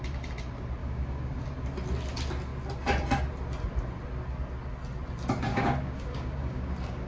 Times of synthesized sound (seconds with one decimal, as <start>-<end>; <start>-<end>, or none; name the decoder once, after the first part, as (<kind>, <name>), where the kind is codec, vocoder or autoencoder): 0.8-1.4 (codec, DAC); 5.5-7.1